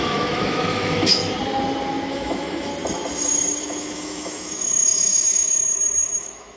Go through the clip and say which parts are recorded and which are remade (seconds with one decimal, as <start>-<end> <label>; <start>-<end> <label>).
0.0-1.2 remade; 1.2-2.1 recorded; 2.1-2.7 remade; 2.7-3.6 recorded; 3.6-6.6 remade